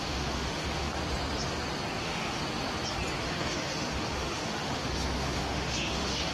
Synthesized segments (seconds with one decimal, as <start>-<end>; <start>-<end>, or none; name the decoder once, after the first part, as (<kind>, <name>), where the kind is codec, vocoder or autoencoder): 0.0-1.0 (autoencoder, DAC-VAE); 2.0-2.4; 3.2-6.3